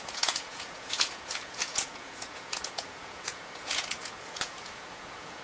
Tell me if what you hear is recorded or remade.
remade